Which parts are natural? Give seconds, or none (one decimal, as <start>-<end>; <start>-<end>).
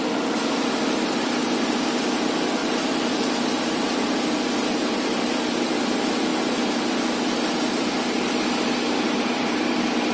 0.0-2.6; 3.1-10.1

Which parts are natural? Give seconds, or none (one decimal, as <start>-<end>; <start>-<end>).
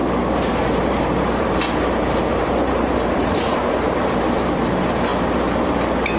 5.1-6.2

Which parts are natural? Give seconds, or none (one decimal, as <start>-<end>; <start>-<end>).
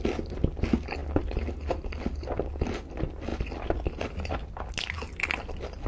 0.0-5.9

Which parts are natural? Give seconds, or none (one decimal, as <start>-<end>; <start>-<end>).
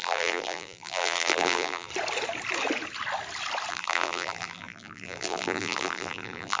1.9-3.7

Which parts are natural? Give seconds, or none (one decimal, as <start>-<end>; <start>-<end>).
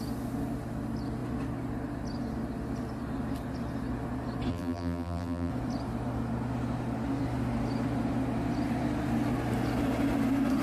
0.0-4.5; 5.5-10.6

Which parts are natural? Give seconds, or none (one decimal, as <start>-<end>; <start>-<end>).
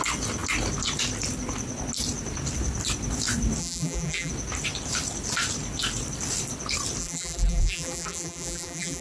0.0-3.6; 4.3-7.0